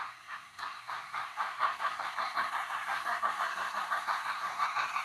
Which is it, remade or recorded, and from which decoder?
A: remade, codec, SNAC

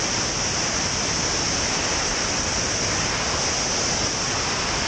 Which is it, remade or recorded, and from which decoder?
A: recorded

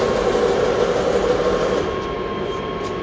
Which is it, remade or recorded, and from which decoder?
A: recorded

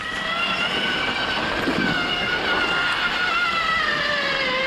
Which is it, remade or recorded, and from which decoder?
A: recorded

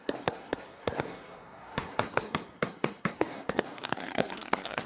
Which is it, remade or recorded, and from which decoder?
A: remade, codec, SNAC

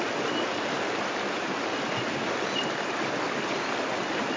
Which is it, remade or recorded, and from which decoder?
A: recorded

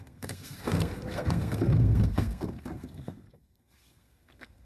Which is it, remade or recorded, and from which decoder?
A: remade, codec, SNAC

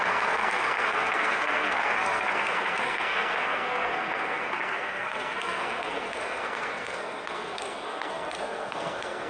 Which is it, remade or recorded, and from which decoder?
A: remade, codec, SNAC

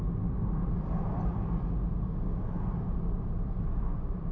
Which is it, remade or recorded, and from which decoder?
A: recorded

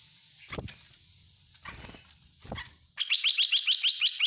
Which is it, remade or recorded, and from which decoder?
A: recorded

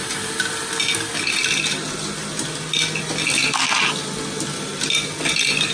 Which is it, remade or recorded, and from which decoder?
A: recorded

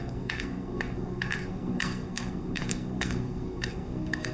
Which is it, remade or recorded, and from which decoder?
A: remade, codec, SNAC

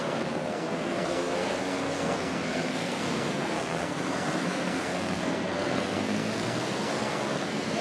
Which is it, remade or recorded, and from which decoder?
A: remade, codec, SNAC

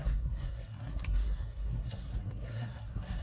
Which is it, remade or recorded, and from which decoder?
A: remade, codec, SNAC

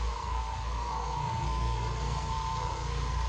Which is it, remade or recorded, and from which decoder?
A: remade, codec, SNAC